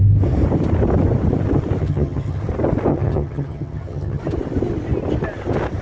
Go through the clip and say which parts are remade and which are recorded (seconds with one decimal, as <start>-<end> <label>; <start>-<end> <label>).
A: 0.0-1.8 recorded; 1.8-2.4 remade; 2.4-2.9 recorded; 2.9-4.2 remade; 4.2-5.8 recorded